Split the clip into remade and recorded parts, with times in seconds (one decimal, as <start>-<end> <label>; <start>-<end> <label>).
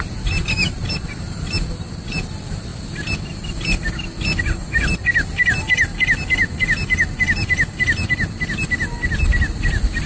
0.0-10.1 recorded